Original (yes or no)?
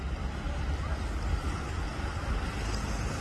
yes